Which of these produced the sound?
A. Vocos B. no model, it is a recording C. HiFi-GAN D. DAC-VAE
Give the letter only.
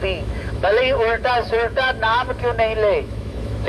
D